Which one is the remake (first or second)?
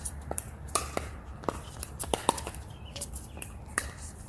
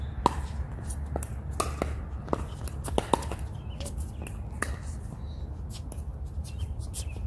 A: first